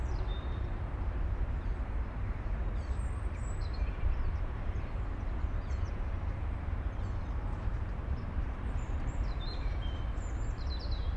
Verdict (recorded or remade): remade